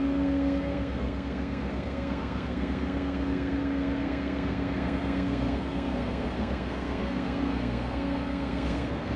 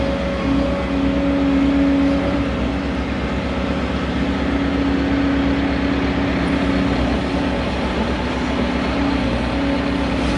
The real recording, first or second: second